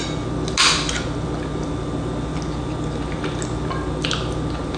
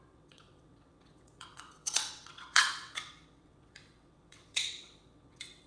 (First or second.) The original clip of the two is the first